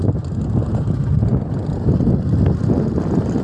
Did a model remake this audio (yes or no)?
no